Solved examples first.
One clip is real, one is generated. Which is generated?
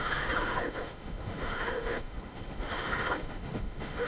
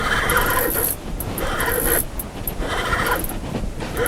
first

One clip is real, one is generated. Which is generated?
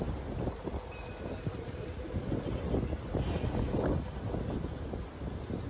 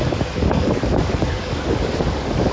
second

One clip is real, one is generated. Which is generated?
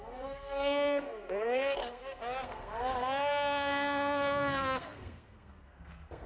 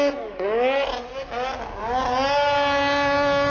first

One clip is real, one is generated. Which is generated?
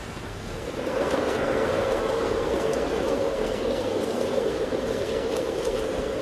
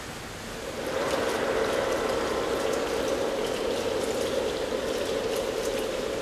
first